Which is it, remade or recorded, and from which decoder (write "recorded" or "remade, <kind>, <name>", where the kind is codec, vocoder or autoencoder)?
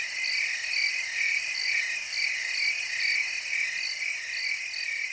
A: recorded